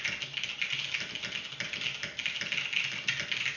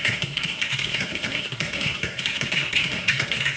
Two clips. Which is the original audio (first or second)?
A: first